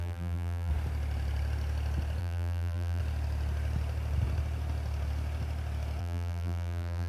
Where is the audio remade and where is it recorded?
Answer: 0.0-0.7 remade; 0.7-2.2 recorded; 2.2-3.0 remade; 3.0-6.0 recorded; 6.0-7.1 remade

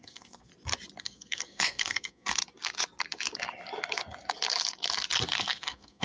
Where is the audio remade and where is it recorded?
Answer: 0.0-0.5 remade; 0.5-1.0 recorded; 1.0-2.4 remade; 2.4-5.4 recorded; 5.4-6.0 remade

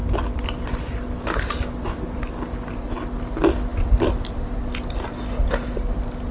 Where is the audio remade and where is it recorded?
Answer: 0.0-6.3 recorded

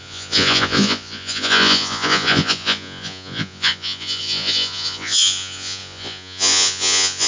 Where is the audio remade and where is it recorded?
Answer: 0.0-7.3 remade

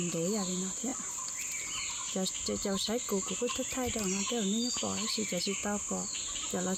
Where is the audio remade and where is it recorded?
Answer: 0.0-6.8 recorded